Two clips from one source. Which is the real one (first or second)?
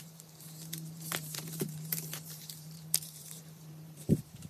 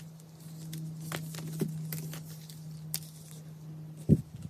second